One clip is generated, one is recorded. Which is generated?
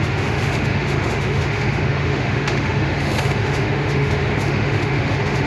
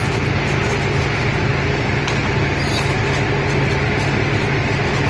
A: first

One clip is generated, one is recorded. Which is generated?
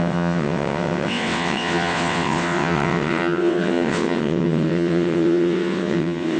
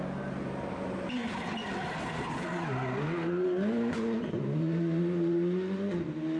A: first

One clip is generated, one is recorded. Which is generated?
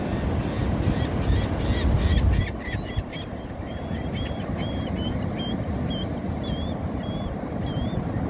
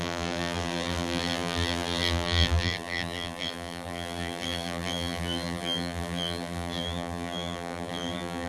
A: second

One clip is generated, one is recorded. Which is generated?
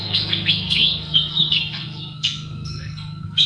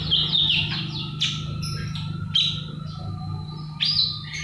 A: first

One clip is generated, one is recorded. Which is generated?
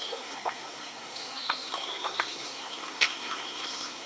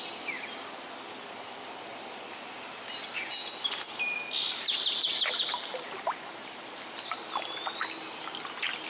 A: first